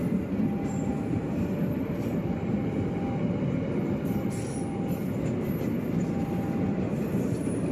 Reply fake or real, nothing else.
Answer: real